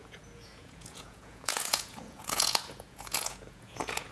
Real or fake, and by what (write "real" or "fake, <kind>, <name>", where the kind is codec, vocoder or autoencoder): fake, vocoder, Vocos